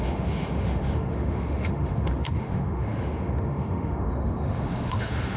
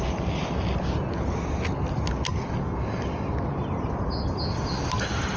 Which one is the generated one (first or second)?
first